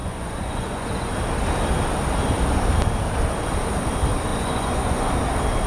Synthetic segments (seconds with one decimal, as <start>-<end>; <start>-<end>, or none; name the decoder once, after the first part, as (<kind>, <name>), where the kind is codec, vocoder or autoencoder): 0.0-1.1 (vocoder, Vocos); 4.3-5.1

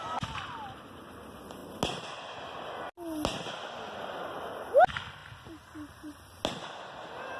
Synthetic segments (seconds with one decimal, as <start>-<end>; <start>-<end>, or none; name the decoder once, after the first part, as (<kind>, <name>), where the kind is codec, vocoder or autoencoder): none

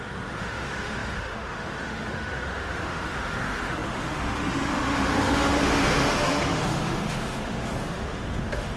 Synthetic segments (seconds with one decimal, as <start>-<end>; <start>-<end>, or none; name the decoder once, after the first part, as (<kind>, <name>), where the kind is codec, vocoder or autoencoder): 0.0-8.8 (autoencoder, DAC-VAE)

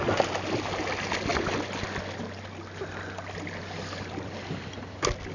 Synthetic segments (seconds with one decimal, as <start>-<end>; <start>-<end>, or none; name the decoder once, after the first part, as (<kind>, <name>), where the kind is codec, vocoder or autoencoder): none

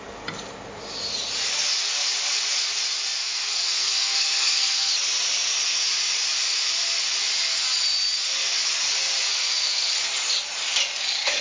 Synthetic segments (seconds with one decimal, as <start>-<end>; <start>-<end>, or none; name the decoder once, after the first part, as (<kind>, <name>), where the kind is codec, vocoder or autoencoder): 3.2-4.9 (codec, SNAC); 9.3-9.9

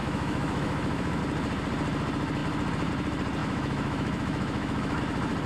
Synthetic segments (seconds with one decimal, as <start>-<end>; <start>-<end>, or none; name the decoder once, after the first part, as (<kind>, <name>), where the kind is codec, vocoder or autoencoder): 0.0-1.2 (autoencoder, DAC-VAE); 3.4-5.0

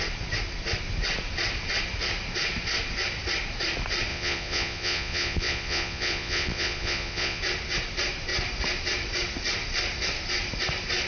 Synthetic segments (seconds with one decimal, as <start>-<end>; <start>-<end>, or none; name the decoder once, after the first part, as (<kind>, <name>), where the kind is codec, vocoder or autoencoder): 4.1-7.4 (vocoder, Vocos)

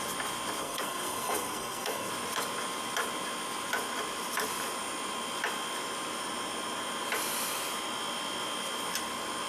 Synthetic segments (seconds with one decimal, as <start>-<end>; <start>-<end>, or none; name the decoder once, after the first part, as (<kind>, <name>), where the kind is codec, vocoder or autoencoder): 0.6-2.1 (codec, SNAC)